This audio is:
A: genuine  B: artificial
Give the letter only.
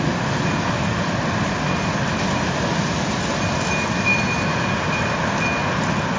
A